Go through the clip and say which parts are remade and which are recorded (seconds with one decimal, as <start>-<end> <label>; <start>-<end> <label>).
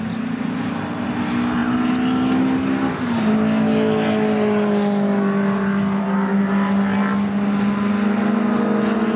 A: 0.0-9.2 recorded